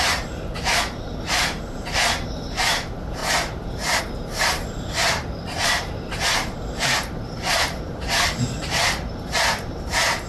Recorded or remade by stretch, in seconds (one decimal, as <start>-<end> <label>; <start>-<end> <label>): 0.0-10.3 remade